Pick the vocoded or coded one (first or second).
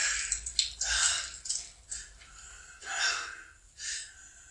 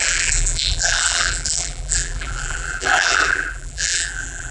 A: second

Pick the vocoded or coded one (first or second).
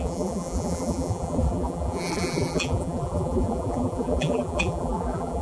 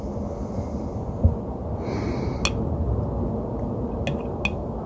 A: first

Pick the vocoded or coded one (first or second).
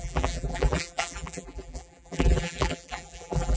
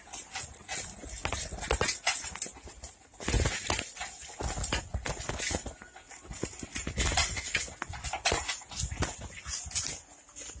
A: first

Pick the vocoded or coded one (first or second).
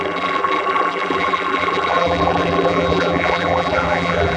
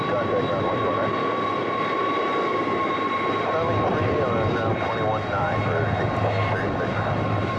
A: first